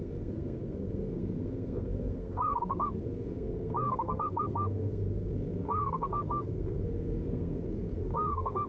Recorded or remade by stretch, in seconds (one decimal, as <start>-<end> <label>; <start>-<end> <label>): 0.0-8.7 remade

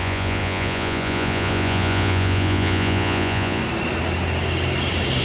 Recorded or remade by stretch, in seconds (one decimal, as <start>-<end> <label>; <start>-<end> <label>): 0.0-3.6 remade; 3.6-5.2 recorded

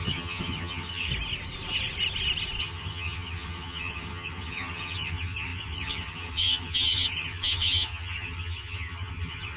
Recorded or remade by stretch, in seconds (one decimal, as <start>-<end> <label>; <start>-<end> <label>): 0.0-1.1 remade; 1.1-2.6 recorded; 2.6-9.6 remade

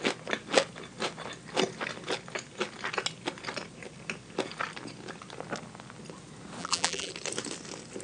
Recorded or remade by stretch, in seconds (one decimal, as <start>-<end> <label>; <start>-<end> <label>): 0.0-6.6 recorded; 6.6-7.1 remade; 7.1-8.0 recorded

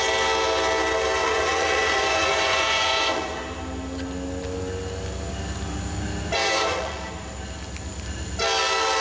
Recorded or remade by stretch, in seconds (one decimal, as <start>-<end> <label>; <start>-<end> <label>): 0.0-1.2 recorded; 1.2-3.4 remade; 3.4-6.4 recorded; 6.4-7.0 remade; 7.0-9.0 recorded

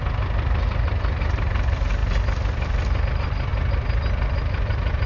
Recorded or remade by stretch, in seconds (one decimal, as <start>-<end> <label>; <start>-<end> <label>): 0.0-5.1 recorded

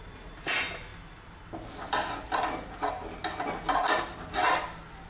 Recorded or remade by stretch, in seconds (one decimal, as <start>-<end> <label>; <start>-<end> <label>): 0.0-5.1 recorded

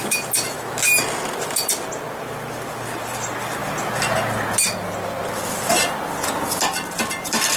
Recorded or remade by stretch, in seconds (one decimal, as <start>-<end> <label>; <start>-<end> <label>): 0.0-7.6 recorded